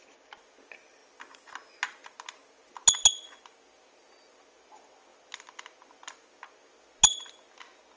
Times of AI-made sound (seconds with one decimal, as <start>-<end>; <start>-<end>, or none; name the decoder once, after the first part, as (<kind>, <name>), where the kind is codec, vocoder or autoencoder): none